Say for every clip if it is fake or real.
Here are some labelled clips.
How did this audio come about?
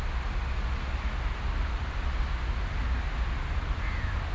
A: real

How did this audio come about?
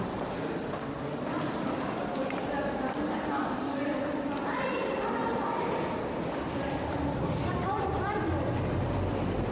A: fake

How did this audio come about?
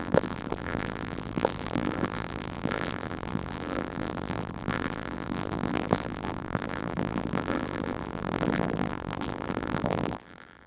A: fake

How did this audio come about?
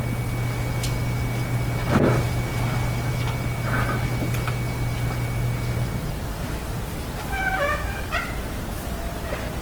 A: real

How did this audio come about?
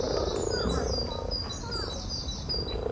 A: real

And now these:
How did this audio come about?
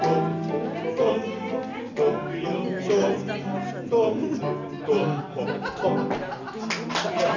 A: real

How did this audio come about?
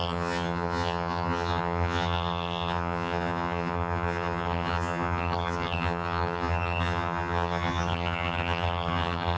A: fake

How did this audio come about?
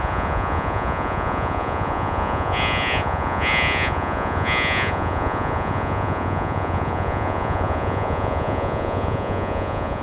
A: fake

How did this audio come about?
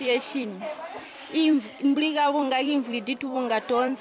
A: fake